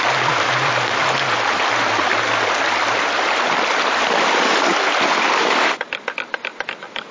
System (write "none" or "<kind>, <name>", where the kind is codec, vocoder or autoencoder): none